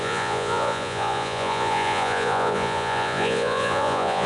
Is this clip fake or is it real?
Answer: fake